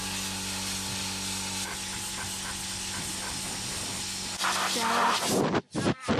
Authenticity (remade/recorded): recorded